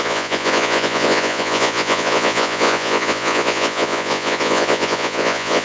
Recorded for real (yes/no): no